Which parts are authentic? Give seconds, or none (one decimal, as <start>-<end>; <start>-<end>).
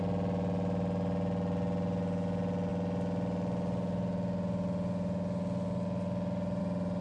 0.0-7.0